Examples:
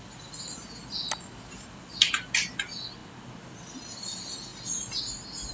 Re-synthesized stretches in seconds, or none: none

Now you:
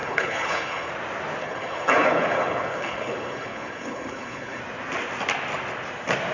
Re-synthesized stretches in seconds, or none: 0.0-0.9 (codec, HILCodec); 1.4-4.6

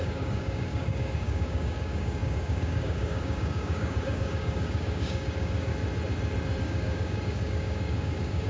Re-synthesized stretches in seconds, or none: 0.0-5.7 (codec, DAC); 6.6-8.5

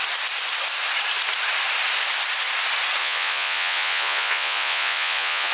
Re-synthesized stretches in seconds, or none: 3.0-5.5 (vocoder, Vocos)

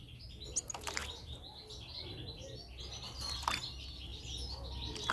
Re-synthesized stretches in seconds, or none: none

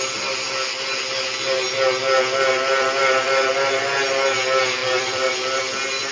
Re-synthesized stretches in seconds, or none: 3.0-3.5 (vocoder, BigVGAN v2); 4.8-5.6

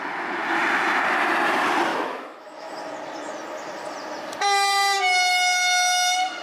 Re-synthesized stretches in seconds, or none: 1.9-2.7 (autoencoder, DAC-VAE)